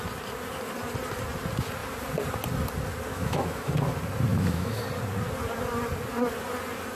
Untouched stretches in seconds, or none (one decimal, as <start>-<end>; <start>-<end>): 0.0-3.1; 3.7-4.3; 4.8-6.9